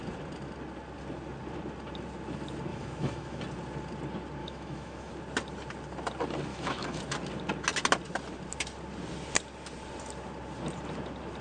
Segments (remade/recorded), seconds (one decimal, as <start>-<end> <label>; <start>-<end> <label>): 0.0-2.7 recorded; 2.7-3.4 remade; 3.4-4.4 recorded; 4.4-5.1 remade; 5.1-6.5 recorded; 6.5-7.0 remade; 7.0-11.4 recorded